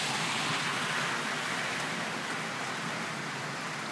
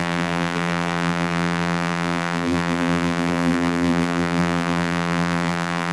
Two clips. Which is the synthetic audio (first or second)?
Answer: second